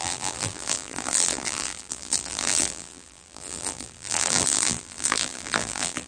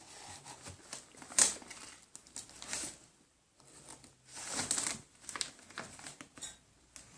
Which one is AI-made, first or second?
first